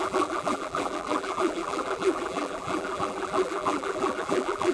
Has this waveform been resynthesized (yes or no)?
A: yes